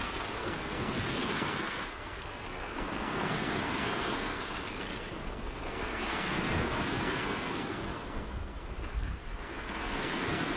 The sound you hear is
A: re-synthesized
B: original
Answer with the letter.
A